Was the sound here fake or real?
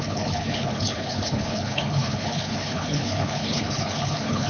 fake